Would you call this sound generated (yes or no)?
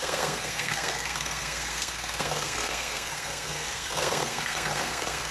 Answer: yes